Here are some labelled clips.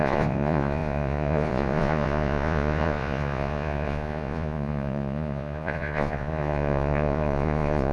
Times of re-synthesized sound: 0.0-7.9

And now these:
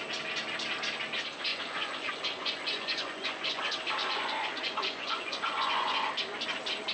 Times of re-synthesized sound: 1.5-3.6; 4.0-6.1

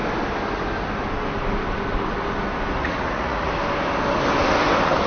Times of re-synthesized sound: 2.8-3.5